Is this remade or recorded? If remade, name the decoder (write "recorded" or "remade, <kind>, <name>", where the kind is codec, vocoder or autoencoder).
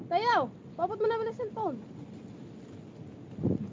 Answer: recorded